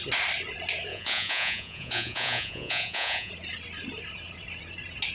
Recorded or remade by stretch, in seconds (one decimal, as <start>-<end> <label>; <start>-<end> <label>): 0.0-0.9 recorded; 0.9-3.3 remade; 3.3-5.1 recorded